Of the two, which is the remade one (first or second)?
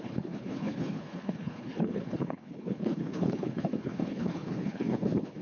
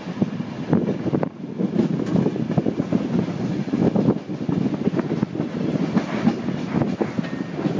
first